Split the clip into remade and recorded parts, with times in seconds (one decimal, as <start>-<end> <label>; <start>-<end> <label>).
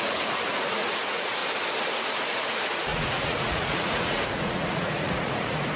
0.0-1.4 remade; 1.4-1.9 recorded; 1.9-5.8 remade